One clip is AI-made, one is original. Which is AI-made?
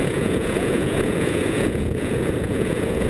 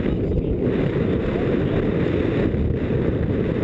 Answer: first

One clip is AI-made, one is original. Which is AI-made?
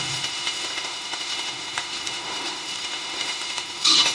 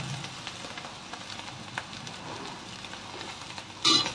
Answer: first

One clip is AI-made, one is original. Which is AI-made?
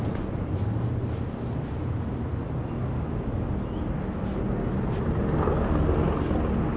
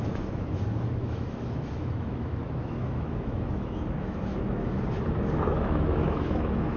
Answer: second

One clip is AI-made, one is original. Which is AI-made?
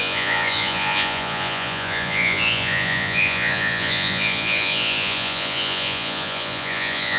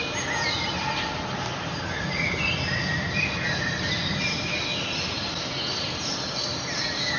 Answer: first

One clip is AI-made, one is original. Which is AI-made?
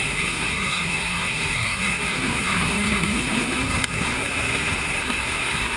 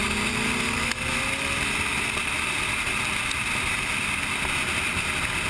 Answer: first